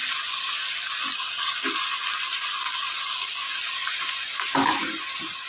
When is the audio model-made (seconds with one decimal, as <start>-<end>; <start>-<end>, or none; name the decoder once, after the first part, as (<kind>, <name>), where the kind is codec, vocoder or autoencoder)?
0.0-1.5 (vocoder, BigVGAN v2)